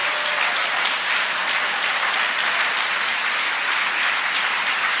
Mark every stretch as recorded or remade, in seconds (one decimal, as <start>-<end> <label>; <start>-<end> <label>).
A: 0.0-5.0 recorded